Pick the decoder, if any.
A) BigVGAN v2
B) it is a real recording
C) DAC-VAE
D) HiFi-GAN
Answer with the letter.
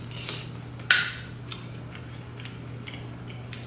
B